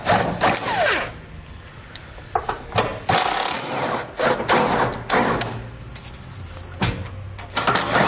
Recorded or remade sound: recorded